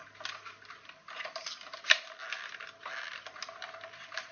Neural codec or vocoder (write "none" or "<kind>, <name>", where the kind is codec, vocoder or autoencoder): none